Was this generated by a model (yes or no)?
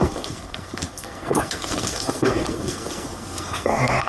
yes